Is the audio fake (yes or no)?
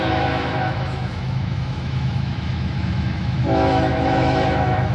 yes